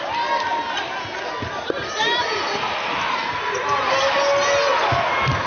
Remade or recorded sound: recorded